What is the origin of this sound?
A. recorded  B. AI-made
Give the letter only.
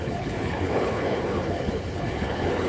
B